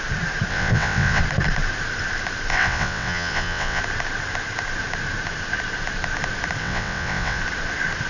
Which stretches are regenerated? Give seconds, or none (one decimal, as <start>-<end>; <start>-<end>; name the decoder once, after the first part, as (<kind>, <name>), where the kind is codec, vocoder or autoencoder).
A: 0.5-1.2 (vocoder, WaveNeXt); 2.5-3.8; 6.6-7.4